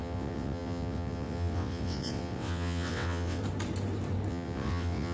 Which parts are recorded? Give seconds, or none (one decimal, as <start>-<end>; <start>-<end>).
3.4-4.3